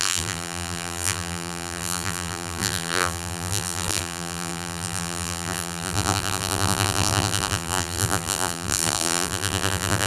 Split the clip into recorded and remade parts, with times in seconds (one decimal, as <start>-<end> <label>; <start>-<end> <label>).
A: 0.0-10.1 remade

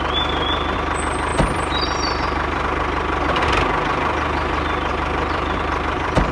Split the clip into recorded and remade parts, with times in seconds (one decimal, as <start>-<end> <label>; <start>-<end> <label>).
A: 0.0-1.3 recorded; 1.3-3.3 remade; 3.3-4.9 recorded; 4.9-6.3 remade